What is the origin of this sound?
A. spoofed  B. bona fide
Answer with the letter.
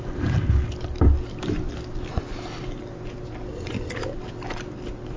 B